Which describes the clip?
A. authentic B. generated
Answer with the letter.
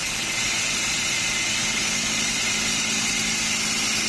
A